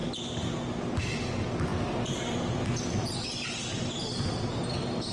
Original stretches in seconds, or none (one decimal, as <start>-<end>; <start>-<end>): 0.0-5.1